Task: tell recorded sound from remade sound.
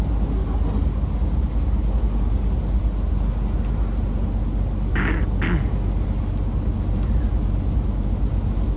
recorded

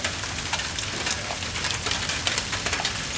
recorded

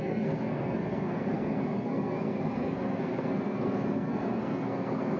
remade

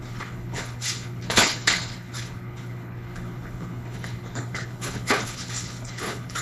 remade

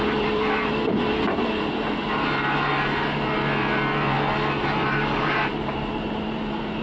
remade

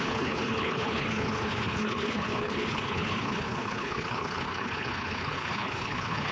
remade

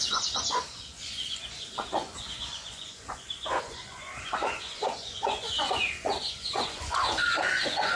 remade